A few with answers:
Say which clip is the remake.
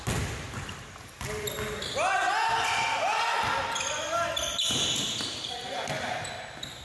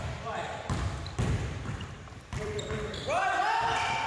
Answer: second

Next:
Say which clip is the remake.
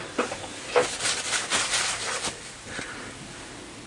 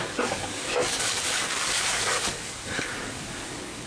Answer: second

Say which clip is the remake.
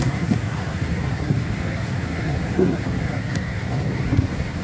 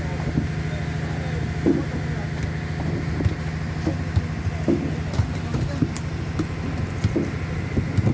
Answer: first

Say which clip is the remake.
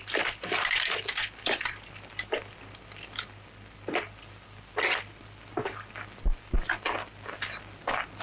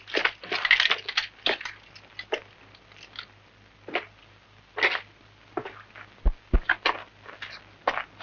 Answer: first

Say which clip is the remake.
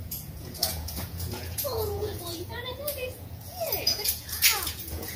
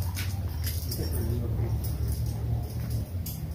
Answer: first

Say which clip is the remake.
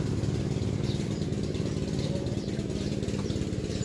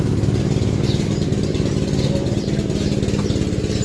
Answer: first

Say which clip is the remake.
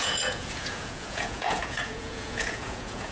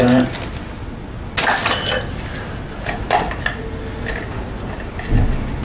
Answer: first